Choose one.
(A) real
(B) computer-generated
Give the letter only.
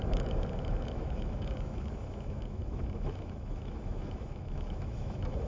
B